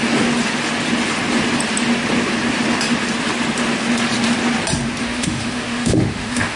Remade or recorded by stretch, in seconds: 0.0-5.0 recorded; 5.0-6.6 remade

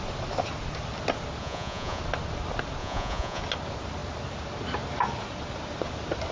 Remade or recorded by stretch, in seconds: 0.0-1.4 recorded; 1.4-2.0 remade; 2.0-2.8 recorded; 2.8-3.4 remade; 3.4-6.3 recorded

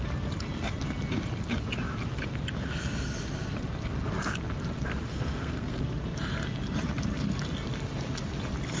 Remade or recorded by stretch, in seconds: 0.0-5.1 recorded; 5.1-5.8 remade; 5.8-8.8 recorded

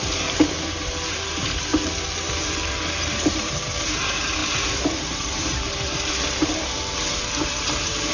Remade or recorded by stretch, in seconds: 0.0-1.7 remade; 1.7-3.3 recorded; 3.3-8.1 remade